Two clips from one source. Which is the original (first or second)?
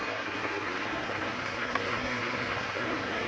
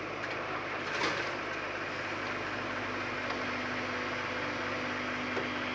second